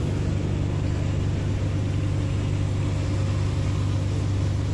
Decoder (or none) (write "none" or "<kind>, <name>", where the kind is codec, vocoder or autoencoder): none